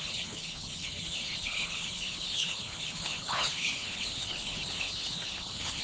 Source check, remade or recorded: remade